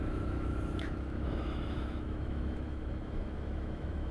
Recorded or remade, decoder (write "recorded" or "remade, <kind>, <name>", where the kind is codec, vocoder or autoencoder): remade, autoencoder, DAC-VAE